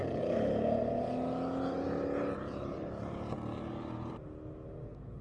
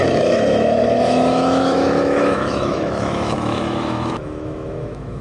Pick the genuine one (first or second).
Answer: first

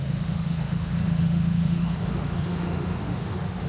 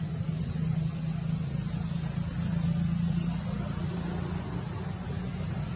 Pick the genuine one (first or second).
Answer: second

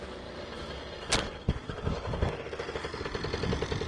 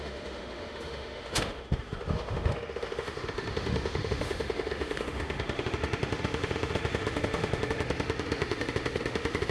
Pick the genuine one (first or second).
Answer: first